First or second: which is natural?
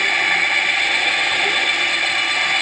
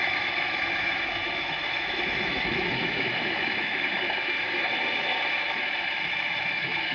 first